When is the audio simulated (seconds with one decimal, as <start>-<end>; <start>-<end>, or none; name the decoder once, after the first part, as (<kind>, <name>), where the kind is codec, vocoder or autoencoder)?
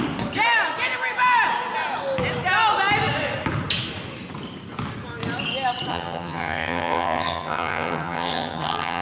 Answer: 5.9-9.0 (vocoder, HiFi-GAN)